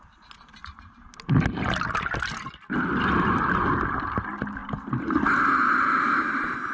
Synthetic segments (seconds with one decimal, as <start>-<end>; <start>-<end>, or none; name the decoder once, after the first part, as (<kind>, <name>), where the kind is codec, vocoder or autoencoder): none